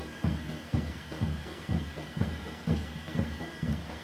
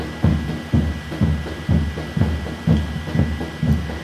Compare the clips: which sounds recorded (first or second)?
second